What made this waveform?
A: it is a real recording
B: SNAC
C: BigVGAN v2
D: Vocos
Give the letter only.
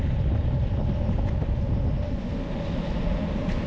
A